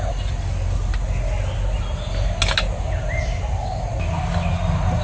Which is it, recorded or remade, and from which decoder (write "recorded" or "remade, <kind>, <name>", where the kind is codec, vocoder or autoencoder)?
recorded